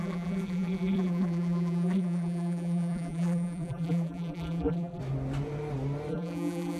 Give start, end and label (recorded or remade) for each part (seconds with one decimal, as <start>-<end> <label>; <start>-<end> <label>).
0.0-5.0 remade; 5.0-6.1 recorded; 6.1-6.8 remade